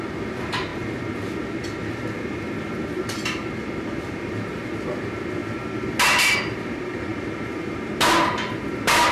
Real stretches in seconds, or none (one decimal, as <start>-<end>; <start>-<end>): 5.4-6.2